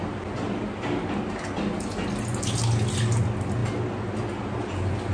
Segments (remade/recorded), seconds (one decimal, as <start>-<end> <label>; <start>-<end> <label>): 0.0-5.1 recorded